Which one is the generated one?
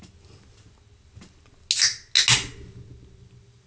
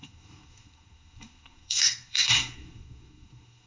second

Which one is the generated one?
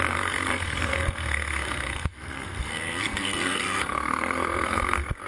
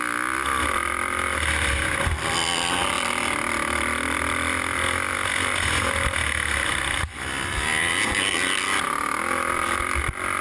first